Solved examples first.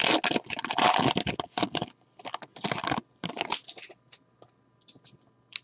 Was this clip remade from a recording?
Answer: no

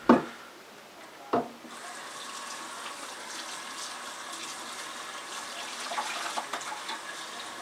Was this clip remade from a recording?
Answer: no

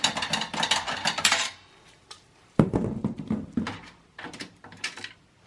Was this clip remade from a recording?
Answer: yes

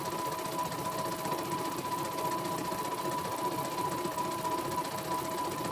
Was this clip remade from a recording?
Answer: no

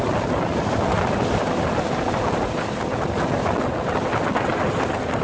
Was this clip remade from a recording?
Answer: no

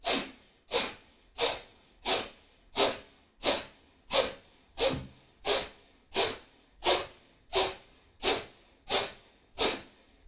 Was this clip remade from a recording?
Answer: no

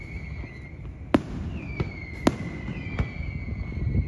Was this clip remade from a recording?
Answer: no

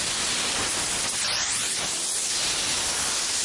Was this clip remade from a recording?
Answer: no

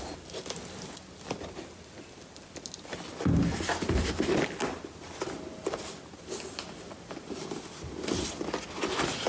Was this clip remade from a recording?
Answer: no